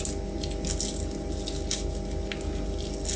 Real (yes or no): yes